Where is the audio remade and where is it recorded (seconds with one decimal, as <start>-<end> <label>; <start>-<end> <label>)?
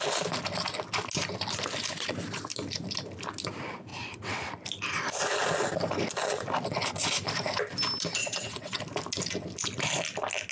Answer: 0.0-3.9 recorded; 3.9-4.5 remade; 4.5-8.2 recorded; 8.2-8.8 remade; 8.8-10.5 recorded